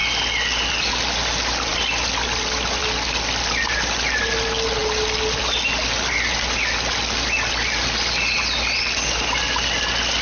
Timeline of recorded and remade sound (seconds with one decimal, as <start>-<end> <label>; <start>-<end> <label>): 0.0-10.2 recorded